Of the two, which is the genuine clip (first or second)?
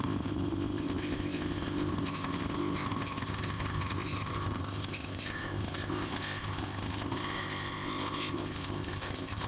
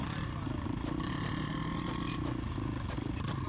second